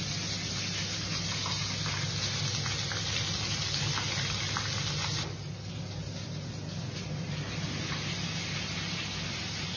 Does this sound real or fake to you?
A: real